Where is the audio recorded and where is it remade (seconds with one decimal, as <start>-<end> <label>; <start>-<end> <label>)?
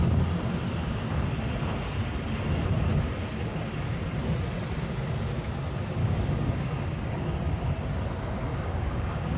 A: 0.0-6.0 recorded; 6.0-7.4 remade; 7.4-8.5 recorded; 8.5-9.4 remade